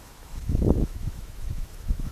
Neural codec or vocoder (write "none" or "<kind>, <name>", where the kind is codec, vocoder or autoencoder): autoencoder, DAC-VAE